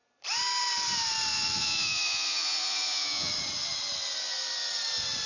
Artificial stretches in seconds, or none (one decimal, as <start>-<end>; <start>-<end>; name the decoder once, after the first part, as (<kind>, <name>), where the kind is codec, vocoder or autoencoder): 1.3-3.3 (vocoder, Vocos)